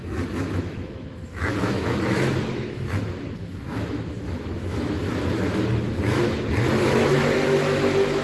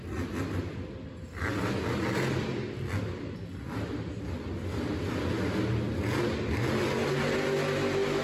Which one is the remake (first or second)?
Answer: first